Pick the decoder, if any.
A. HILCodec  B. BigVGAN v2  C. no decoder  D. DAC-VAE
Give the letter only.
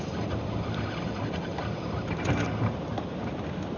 C